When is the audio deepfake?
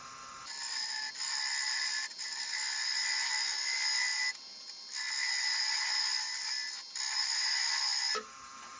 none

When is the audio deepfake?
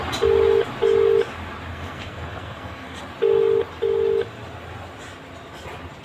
1.7-3.0 (codec, SNAC)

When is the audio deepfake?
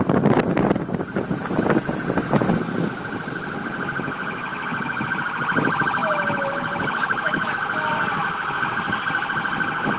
4.5-5.1 (autoencoder, DAC-VAE); 6.0-7.5; 8.2-8.7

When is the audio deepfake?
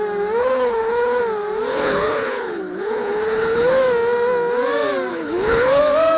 0.4-1.2 (codec, HILCodec); 1.7-3.8; 5.1-5.8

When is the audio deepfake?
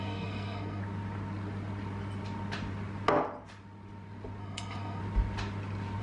0.0-0.8 (codec, SNAC); 4.4-5.0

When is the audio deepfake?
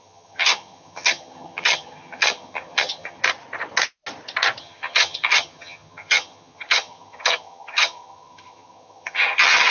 0.0-3.2 (vocoder, HiFi-GAN); 4.6-9.7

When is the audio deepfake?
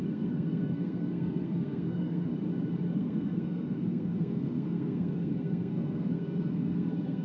0.0-2.3 (codec, SNAC); 2.9-7.2